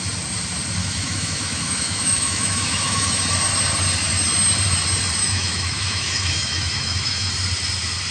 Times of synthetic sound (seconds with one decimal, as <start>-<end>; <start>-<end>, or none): 0.8-3.2; 5.2-7.3

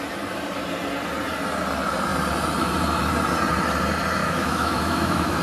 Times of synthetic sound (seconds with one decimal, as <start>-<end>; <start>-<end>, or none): 4.2-5.4

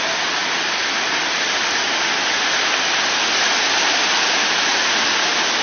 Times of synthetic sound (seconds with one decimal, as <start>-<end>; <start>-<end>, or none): none